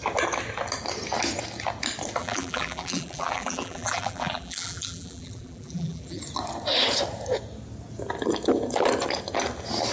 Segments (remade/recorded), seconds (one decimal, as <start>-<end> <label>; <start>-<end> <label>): 0.0-2.2 recorded; 2.2-6.2 remade; 6.2-9.9 recorded

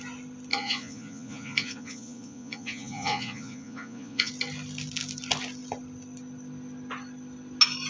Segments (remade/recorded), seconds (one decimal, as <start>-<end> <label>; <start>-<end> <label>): 0.0-0.5 recorded; 0.5-4.3 remade; 4.3-7.9 recorded

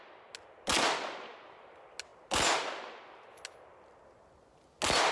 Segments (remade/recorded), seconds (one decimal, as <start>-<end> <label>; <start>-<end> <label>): 0.0-5.1 recorded

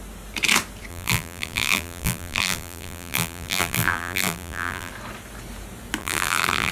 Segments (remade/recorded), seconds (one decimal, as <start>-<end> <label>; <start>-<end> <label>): 0.0-0.9 recorded; 0.9-4.9 remade; 4.9-6.0 recorded; 6.0-6.7 remade

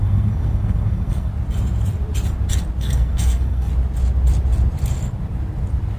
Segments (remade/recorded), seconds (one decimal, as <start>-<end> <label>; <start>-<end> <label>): 0.0-1.3 remade; 1.3-2.8 recorded; 2.8-3.7 remade; 3.7-6.0 recorded

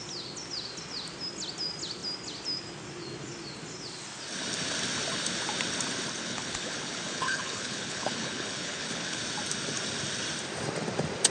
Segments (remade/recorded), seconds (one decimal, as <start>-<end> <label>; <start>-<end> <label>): 0.0-6.2 recorded; 6.2-9.2 remade; 9.2-11.3 recorded